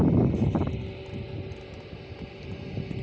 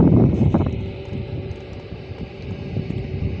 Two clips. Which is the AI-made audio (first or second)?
second